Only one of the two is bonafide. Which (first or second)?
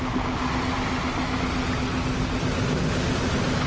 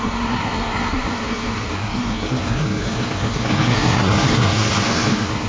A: first